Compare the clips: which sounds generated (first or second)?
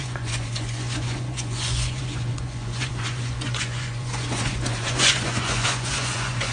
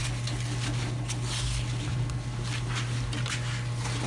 first